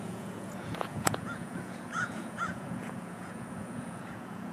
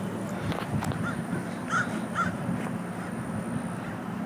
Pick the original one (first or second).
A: second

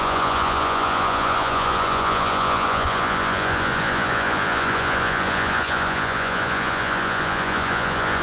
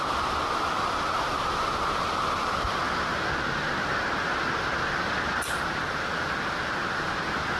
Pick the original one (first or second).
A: second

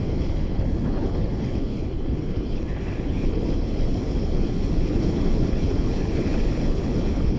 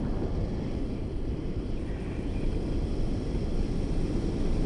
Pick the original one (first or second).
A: second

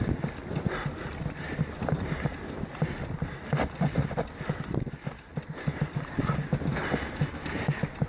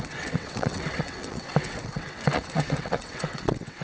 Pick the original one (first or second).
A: first